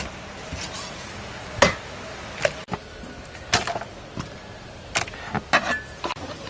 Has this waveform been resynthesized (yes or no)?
no